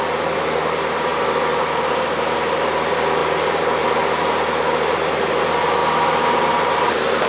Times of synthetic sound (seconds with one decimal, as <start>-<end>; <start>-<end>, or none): none